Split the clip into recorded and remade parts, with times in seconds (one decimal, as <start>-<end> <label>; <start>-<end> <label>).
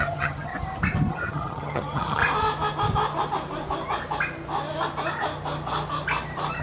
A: 0.0-0.5 remade; 0.5-1.1 recorded; 1.1-2.2 remade; 2.2-6.6 recorded